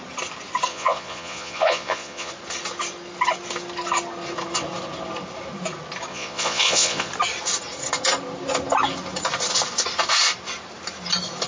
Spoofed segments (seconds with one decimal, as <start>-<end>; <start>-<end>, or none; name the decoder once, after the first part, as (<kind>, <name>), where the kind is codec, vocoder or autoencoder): 0.7-2.3 (vocoder, Vocos); 6.1-7.1